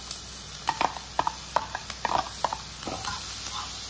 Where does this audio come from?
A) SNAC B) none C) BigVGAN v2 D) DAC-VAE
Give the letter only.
B